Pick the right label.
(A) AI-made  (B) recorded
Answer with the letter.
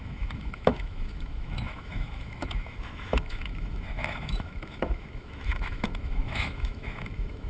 A